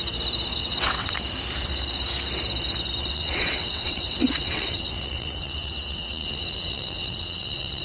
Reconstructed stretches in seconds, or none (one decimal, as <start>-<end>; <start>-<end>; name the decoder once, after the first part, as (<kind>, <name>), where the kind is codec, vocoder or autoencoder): 0.6-1.2 (vocoder, WaveNeXt); 3.0-7.8